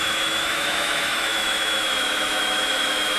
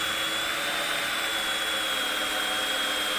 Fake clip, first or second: first